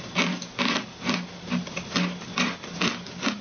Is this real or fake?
real